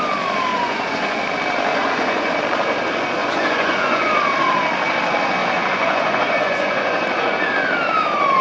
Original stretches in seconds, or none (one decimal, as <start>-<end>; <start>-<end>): 0.0-0.5; 1.2-1.7; 2.3-3.2; 4.1-5.4; 7.5-8.4